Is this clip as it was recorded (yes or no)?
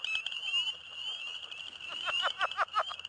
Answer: yes